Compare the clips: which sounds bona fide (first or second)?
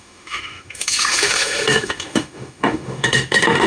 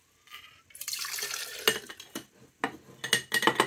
second